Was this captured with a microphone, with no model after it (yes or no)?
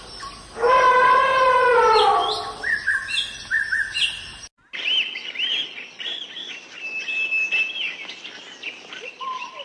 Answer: yes